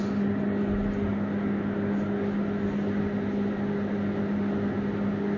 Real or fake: real